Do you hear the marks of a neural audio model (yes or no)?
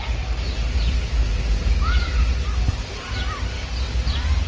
no